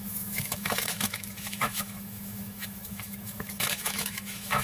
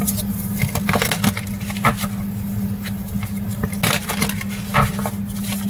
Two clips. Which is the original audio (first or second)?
second